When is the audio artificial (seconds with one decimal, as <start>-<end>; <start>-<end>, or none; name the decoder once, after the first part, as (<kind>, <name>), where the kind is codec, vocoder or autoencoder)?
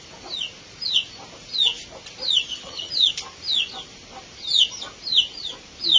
2.5-3.1 (vocoder, HiFi-GAN)